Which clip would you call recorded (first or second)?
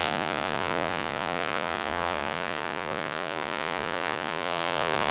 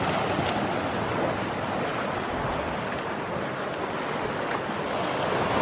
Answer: second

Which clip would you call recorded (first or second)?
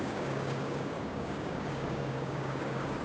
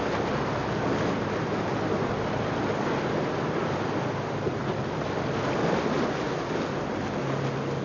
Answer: second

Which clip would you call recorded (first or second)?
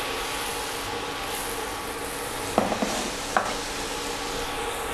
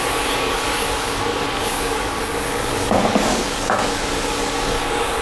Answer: first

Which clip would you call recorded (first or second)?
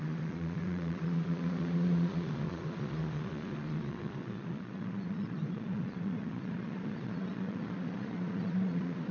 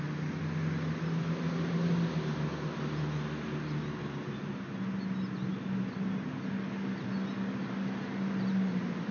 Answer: second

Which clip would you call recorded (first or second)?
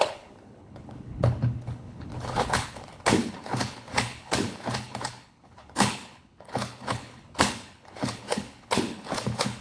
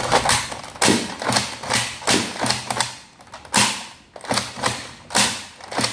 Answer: second